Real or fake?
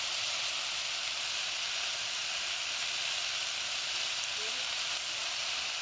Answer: real